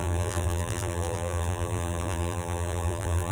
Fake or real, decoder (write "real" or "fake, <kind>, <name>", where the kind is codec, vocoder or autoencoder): fake, vocoder, BigVGAN v2